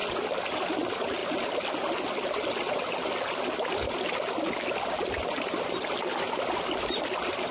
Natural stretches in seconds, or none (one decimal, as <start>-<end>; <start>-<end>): 0.0-7.5